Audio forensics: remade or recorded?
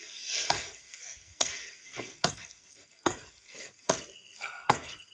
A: remade